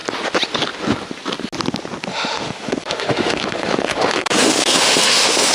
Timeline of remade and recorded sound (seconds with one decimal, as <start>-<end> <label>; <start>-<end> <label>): 0.0-2.1 recorded; 2.1-5.5 remade